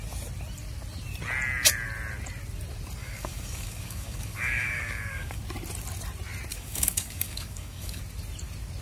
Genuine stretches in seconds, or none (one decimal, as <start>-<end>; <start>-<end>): 0.0-3.0; 5.4-6.5; 8.0-8.8